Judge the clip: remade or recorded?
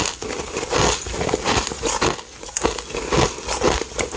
recorded